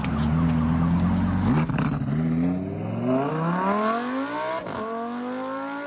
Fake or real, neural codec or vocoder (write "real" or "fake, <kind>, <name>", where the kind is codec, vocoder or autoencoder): real